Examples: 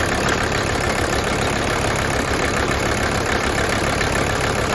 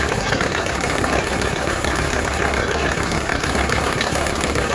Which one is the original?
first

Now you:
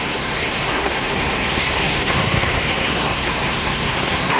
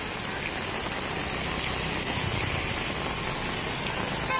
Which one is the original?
second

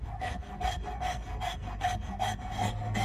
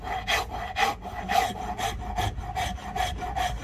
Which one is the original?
second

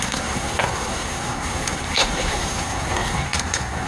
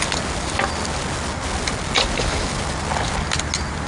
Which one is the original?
second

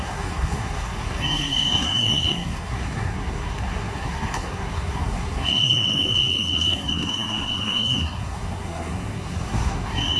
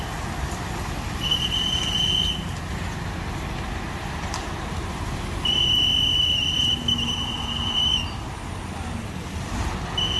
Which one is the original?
second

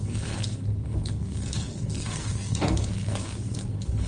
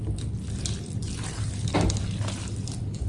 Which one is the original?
second